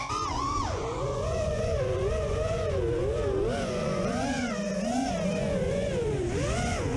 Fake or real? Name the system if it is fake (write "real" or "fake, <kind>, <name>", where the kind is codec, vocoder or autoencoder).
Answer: fake, vocoder, Vocos